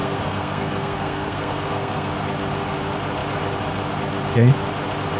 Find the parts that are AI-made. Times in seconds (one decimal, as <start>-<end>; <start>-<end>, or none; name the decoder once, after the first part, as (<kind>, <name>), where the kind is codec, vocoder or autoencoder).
0.0-2.1 (codec, SNAC)